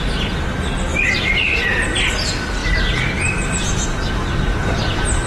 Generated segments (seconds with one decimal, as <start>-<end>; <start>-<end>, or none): 0.0-5.3

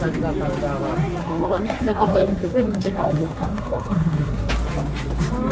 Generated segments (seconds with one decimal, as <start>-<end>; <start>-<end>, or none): 1.2-4.5

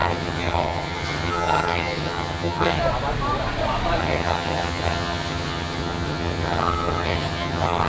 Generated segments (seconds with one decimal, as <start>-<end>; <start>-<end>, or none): 0.0-2.8; 4.0-7.9

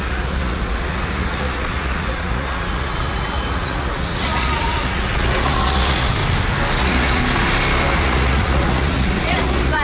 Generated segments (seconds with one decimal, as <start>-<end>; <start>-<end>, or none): 0.0-6.2; 6.8-7.2; 7.9-9.8

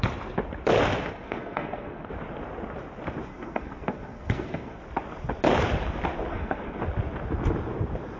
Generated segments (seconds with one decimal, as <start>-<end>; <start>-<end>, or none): 1.1-2.1; 3.3-4.8; 6.3-6.8

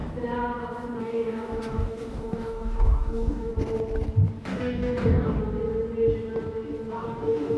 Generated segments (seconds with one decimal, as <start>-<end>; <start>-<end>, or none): 1.0-3.5; 4.4-5.4; 6.9-7.6

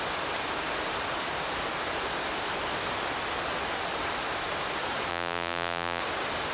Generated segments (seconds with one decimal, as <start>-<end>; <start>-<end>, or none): 5.1-6.0